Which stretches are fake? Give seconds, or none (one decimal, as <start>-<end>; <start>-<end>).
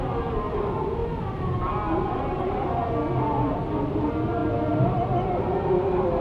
none